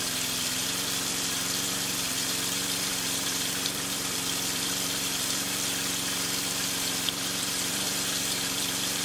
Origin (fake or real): fake